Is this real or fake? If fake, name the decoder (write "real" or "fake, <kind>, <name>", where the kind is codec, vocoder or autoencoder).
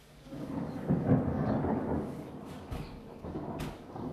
fake, codec, DAC